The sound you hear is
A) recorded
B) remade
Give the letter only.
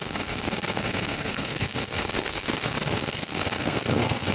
B